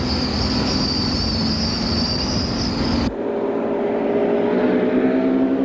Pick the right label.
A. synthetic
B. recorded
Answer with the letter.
B